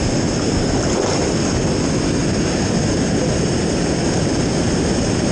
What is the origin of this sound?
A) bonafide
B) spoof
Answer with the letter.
A